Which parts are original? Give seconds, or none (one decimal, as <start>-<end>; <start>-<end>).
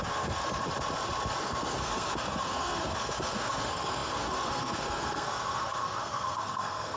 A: 0.4-1.4